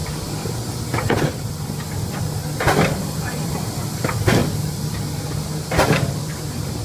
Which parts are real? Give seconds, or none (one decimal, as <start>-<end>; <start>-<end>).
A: 0.0-1.2; 2.4-3.0; 4.4-5.4